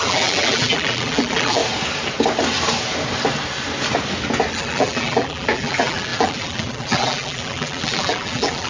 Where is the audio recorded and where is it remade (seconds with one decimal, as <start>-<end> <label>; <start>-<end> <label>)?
0.0-1.6 remade; 1.6-4.5 recorded; 4.5-8.7 remade